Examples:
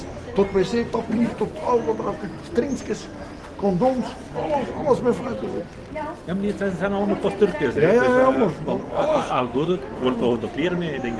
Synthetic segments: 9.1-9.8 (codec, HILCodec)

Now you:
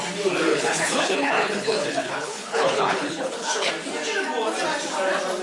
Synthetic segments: 0.5-3.7 (codec, HILCodec)

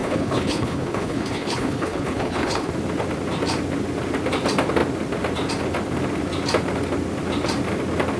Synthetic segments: 0.0-2.7 (codec, HILCodec)

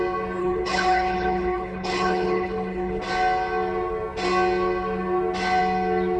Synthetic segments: 0.4-3.0 (codec, HILCodec)